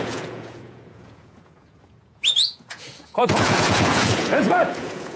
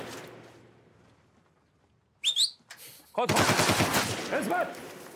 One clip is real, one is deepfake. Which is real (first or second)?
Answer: second